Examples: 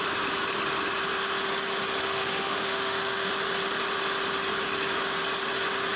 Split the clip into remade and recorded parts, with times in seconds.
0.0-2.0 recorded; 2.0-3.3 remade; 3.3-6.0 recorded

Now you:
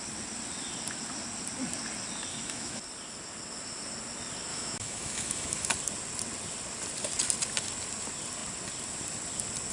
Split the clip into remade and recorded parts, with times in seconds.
0.0-2.3 recorded; 2.3-2.8 remade; 2.8-4.5 recorded; 4.5-5.7 remade; 5.7-9.7 recorded

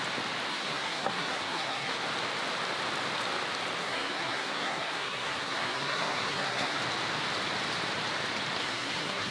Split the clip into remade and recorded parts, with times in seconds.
0.0-0.5 recorded; 0.5-2.0 remade; 2.0-3.8 recorded; 3.8-6.8 remade; 6.8-8.6 recorded; 8.6-9.3 remade

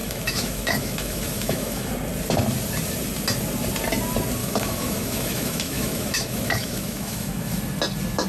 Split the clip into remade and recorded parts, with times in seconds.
0.0-1.9 remade; 1.9-4.4 recorded; 4.4-7.6 remade; 7.6-8.3 recorded

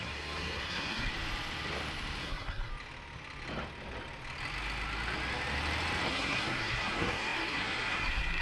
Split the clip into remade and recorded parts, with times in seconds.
0.0-1.1 remade; 1.1-2.2 recorded; 2.2-2.7 remade; 2.7-6.1 recorded; 6.1-8.4 remade

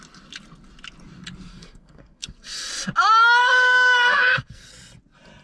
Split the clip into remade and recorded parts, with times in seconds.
0.0-1.5 recorded; 1.5-2.7 remade; 2.7-3.4 recorded; 3.4-4.7 remade; 4.7-5.4 recorded

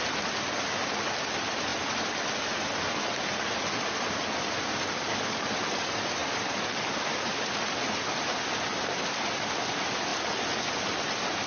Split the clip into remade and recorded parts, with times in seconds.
0.0-11.5 recorded